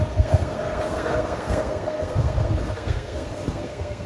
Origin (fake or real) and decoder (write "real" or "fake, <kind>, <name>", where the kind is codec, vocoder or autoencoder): fake, codec, SNAC